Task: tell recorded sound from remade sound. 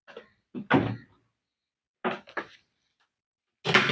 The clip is recorded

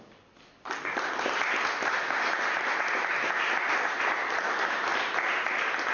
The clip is recorded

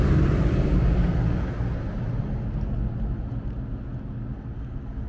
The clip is recorded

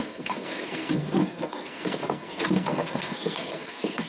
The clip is remade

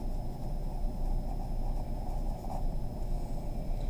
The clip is recorded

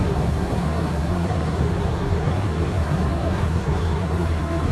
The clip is remade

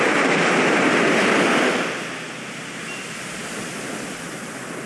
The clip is recorded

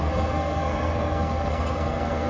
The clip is remade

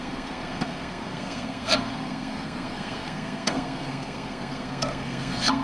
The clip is remade